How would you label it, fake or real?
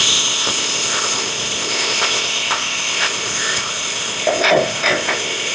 fake